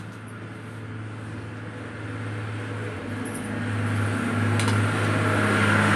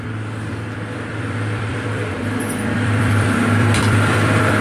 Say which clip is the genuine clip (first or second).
first